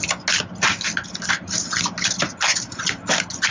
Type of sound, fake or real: real